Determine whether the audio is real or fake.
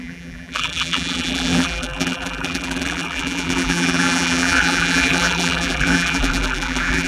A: fake